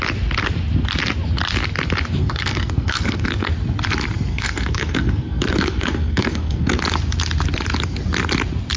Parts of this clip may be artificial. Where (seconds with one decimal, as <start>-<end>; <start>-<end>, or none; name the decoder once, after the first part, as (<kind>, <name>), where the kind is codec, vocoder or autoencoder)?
2.2-3.5 (codec, SNAC); 4.3-6.8